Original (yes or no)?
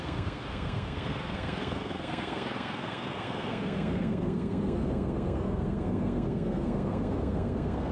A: no